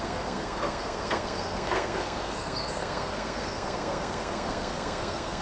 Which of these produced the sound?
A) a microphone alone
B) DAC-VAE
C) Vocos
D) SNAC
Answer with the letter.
D